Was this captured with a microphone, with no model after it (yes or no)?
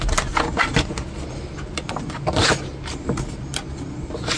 yes